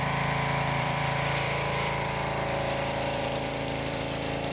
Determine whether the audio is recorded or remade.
remade